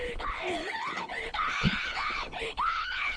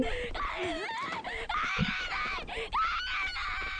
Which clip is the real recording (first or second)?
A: second